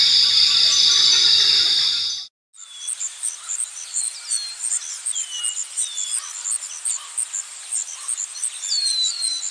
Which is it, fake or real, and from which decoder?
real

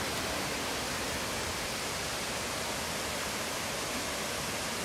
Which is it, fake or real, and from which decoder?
real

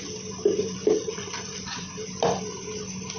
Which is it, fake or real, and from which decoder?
real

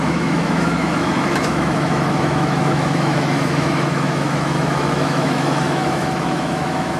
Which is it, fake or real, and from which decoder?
fake, autoencoder, DAC-VAE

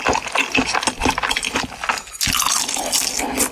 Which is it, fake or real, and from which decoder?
real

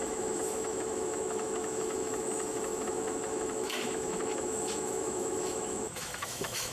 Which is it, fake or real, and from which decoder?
fake, autoencoder, DAC-VAE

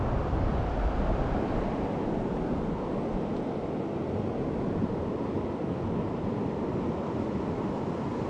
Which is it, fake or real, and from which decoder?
real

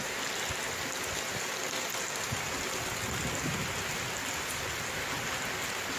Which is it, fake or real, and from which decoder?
real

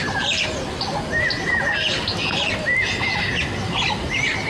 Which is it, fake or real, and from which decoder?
real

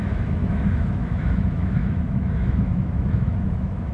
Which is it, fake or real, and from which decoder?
fake, autoencoder, DAC-VAE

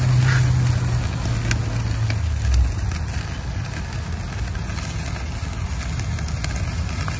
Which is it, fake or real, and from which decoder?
real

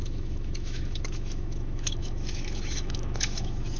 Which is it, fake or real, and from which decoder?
fake, autoencoder, DAC-VAE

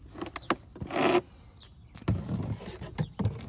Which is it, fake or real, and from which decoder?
real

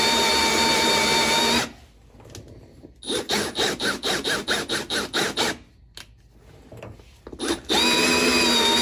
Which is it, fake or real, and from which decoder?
real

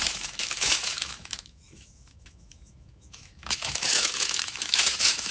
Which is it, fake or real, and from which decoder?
fake, autoencoder, DAC-VAE